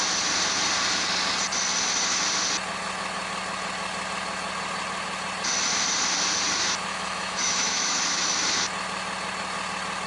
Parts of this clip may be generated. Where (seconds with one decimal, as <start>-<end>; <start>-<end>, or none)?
6.9-8.4